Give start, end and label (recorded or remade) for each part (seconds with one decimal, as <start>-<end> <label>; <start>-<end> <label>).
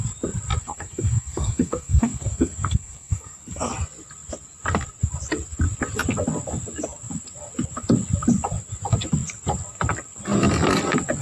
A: 0.0-0.6 recorded; 0.6-3.7 remade; 3.7-11.2 recorded